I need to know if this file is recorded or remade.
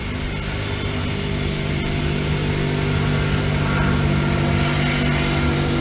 recorded